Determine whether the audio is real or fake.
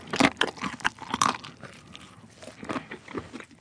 real